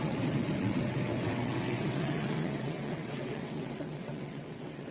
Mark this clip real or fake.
fake